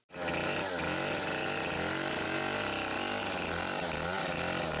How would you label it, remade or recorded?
recorded